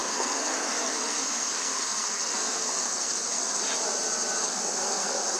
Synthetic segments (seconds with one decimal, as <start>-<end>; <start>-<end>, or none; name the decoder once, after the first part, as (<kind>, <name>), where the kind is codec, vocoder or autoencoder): 0.0-3.6 (codec, SNAC); 4.4-5.4